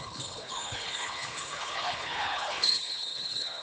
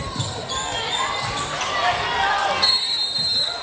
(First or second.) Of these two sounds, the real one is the second